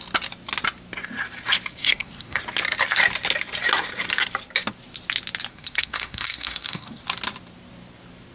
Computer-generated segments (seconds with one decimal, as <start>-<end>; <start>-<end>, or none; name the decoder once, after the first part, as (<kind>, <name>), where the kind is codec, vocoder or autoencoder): 1.8-2.4 (codec, SNAC); 5.5-7.0